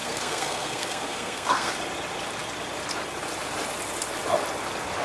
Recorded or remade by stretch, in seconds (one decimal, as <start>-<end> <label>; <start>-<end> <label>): 0.0-1.7 remade; 1.7-5.0 recorded